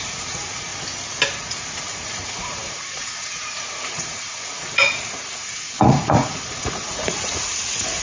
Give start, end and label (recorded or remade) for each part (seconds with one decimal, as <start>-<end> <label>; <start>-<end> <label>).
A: 0.0-0.7 remade; 0.7-1.3 recorded; 1.3-8.0 remade